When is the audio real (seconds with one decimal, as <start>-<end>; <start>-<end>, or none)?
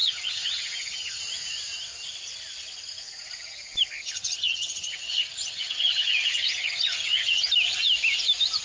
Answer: 1.2-4.0; 7.4-8.6